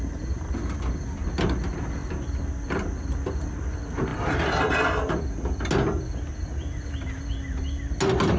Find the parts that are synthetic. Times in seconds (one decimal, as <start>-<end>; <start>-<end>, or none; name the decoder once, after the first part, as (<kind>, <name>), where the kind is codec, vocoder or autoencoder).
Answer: none